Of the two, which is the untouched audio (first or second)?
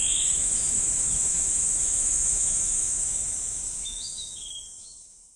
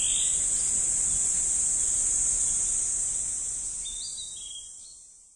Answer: second